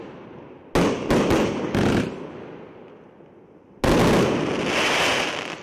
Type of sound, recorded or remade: recorded